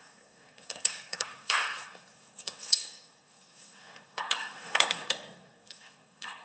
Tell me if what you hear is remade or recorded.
remade